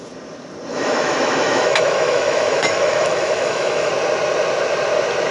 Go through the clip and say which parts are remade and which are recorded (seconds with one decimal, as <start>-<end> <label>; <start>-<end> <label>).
0.0-0.7 recorded; 0.7-3.9 remade; 3.9-5.3 recorded